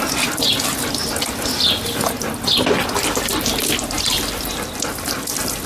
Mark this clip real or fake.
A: real